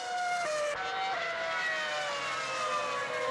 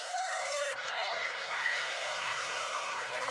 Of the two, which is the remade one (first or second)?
second